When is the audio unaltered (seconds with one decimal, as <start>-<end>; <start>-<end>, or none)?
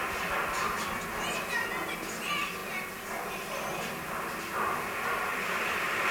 0.0-5.3